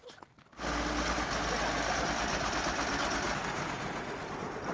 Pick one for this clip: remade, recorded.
recorded